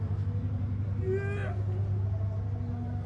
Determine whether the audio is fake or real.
real